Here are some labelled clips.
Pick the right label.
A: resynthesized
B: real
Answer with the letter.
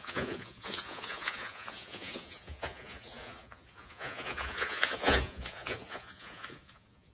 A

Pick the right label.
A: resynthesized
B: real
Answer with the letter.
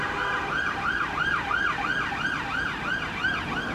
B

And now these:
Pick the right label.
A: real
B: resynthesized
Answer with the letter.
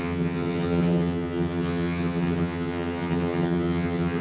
B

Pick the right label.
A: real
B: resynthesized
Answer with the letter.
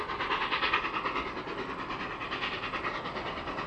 A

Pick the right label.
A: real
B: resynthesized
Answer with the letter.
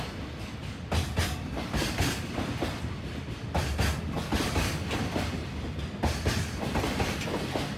A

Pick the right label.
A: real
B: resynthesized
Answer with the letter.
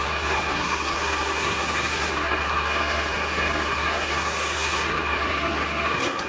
B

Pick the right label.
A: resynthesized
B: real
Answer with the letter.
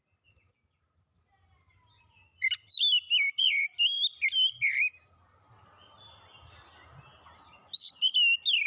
B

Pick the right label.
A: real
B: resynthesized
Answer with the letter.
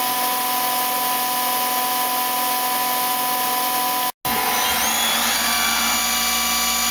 A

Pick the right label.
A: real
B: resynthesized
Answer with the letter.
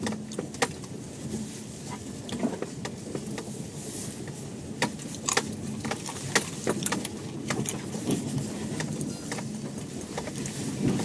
A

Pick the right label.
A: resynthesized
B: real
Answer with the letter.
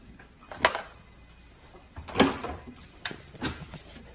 B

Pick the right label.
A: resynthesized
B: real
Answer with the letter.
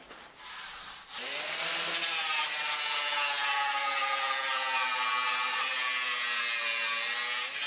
B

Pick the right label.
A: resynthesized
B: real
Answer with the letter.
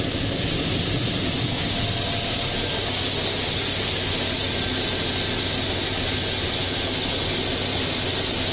B